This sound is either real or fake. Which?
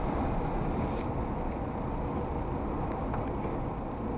real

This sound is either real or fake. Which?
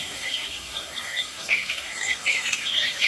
fake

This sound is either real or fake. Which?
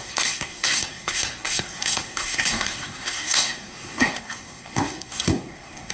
fake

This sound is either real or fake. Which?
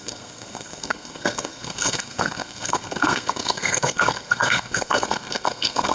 fake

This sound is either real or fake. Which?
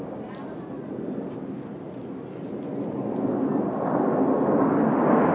real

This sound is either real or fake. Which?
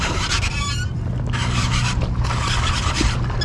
real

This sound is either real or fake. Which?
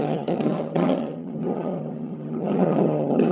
fake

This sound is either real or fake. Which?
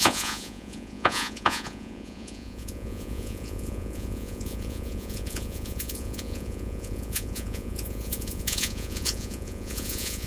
fake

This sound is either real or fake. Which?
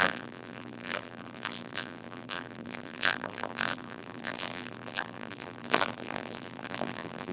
fake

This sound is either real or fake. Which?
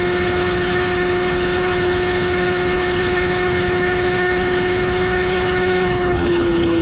fake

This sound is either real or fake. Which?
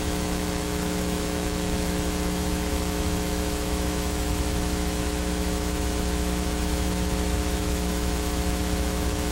fake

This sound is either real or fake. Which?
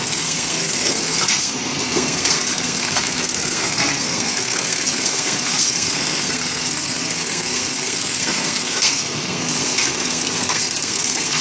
fake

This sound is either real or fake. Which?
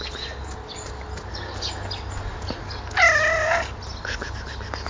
real